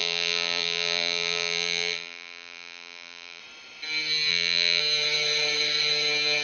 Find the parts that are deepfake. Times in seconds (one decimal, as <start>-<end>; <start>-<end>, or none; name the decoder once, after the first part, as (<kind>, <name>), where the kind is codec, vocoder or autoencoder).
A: 0.0-3.4 (vocoder, BigVGAN v2); 4.3-4.8